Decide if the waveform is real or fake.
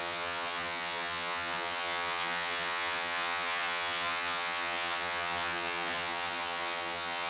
fake